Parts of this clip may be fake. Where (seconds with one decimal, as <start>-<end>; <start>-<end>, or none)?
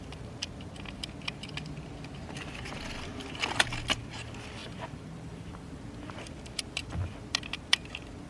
4.6-5.8